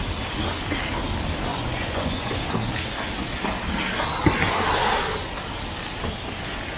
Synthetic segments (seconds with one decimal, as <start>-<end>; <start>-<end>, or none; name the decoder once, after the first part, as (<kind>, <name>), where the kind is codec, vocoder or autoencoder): 1.5-2.4 (vocoder, Vocos)